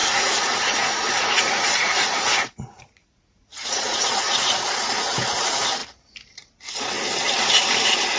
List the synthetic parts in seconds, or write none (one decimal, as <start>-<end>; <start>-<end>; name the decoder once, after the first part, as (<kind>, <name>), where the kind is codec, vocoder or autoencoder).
0.0-4.4 (vocoder, Vocos)